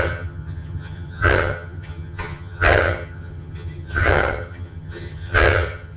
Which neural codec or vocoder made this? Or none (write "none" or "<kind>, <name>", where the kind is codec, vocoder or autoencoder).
vocoder, HiFi-GAN